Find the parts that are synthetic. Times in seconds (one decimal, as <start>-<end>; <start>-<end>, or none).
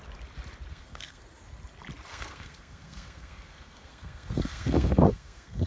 0.7-1.2; 2.1-5.7